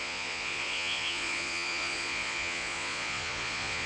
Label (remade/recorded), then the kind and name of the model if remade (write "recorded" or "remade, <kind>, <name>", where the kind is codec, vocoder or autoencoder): remade, vocoder, Vocos